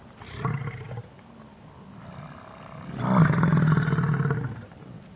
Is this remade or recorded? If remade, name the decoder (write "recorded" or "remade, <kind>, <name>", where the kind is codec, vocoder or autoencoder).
recorded